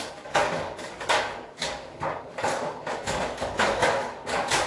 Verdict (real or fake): fake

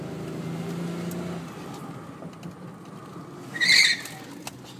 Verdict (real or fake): real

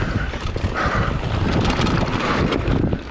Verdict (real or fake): real